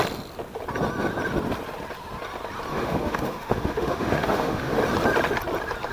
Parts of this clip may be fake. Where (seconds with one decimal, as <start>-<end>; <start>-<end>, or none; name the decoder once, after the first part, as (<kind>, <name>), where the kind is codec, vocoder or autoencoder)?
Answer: 2.7-4.8 (autoencoder, DAC-VAE)